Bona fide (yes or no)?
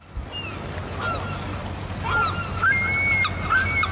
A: yes